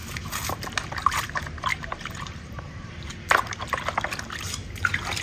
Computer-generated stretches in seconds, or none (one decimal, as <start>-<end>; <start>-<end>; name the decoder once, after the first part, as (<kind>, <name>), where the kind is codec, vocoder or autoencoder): 1.7-3.7 (vocoder, BigVGAN v2)